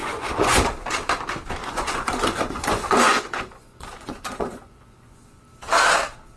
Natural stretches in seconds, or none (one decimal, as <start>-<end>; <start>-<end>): 0.6-1.6; 5.4-6.4

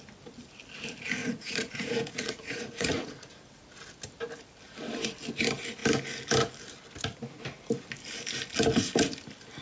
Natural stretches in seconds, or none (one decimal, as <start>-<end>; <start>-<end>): 0.0-1.2; 3.3-9.6

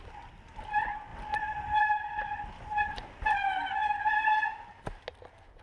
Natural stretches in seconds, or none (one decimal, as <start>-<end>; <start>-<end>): 0.0-5.6

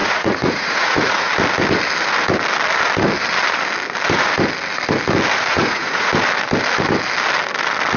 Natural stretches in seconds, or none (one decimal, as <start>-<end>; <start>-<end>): 1.3-5.5; 6.1-8.0

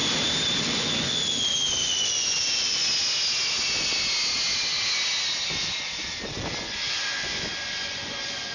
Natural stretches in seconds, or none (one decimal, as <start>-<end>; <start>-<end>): 0.0-0.6; 2.8-6.6

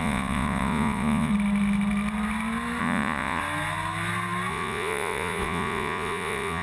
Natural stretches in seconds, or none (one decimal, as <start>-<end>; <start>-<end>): 1.3-2.8; 3.4-4.5